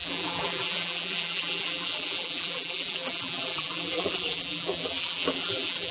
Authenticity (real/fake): fake